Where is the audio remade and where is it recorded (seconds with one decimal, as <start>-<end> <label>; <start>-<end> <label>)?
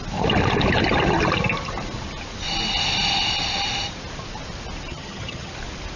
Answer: 0.0-4.9 recorded; 4.9-5.5 remade; 5.5-6.0 recorded